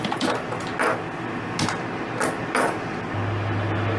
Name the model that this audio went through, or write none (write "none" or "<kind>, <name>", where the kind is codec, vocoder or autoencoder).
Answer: none